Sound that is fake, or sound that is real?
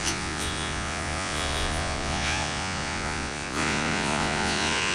fake